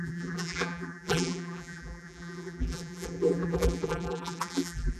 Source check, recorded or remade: remade